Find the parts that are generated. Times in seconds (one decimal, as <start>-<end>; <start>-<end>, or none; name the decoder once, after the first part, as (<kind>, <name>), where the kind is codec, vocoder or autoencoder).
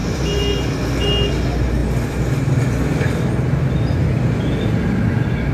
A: none